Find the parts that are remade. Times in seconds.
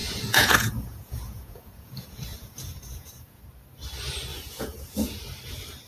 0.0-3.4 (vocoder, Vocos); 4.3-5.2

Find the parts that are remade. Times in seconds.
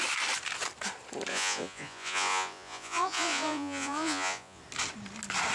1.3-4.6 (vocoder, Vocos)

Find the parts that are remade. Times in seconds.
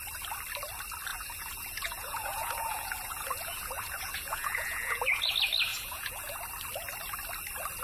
1.1-5.3 (vocoder, Vocos); 5.7-6.4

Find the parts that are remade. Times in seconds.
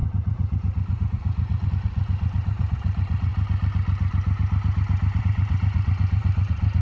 0.0-3.3 (vocoder, Vocos); 5.2-6.8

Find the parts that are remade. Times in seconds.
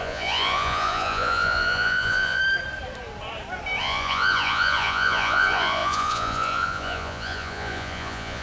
0.0-2.4 (vocoder, Vocos); 3.8-8.4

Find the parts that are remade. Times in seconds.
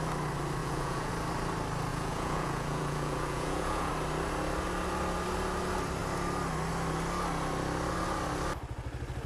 0.6-1.1 (vocoder, Vocos); 1.9-3.9